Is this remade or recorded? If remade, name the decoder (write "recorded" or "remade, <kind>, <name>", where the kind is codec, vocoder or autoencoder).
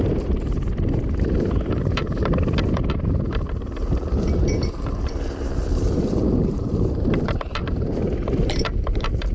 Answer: remade, vocoder, BigVGAN v2